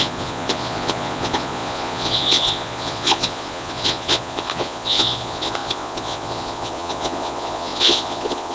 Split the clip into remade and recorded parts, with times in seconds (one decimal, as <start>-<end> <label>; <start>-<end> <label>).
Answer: 0.0-8.5 remade